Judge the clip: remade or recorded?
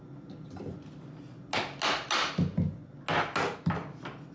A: recorded